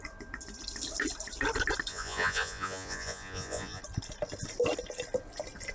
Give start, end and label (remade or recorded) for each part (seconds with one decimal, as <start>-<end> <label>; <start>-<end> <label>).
0.0-1.9 recorded; 1.9-3.8 remade; 3.8-5.7 recorded